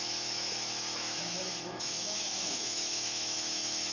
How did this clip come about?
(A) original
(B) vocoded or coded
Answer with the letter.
B